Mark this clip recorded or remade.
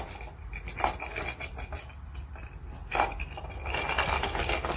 recorded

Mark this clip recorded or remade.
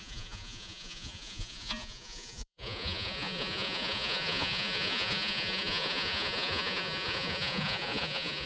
remade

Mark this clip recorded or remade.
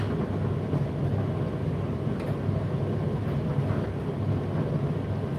recorded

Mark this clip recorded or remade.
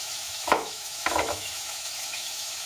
remade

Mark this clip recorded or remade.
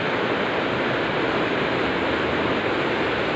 recorded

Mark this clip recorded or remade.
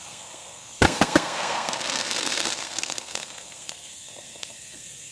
remade